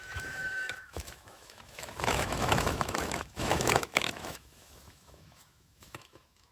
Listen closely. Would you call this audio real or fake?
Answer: fake